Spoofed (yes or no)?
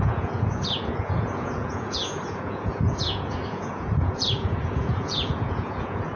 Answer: yes